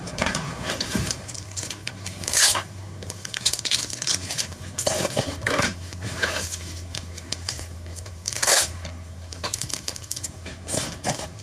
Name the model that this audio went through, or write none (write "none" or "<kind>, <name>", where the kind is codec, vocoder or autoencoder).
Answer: codec, SNAC